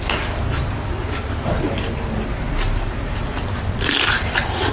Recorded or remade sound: recorded